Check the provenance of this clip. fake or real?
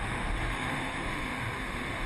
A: fake